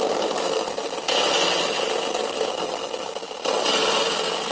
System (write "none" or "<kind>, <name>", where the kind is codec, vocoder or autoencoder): none